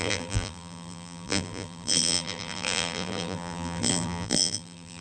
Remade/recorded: remade